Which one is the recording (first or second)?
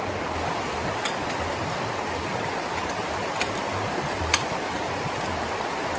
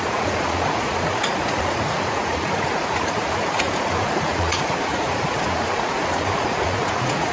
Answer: first